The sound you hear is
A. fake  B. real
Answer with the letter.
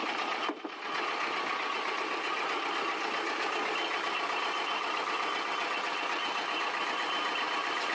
B